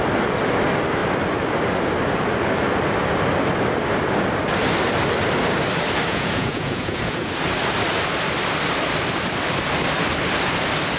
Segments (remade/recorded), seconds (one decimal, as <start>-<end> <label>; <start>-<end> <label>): 0.0-6.1 recorded; 6.1-7.3 remade; 7.3-11.0 recorded